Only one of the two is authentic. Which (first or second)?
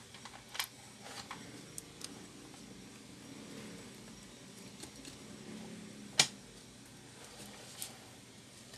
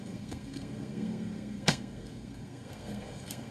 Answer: first